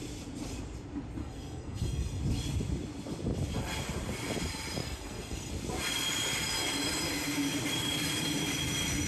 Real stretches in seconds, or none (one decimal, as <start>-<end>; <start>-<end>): 0.0-1.2; 2.2-4.8; 5.5-9.1